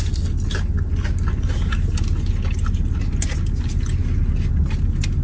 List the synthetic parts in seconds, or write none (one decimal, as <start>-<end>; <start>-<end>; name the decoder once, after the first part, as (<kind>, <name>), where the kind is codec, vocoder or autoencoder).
none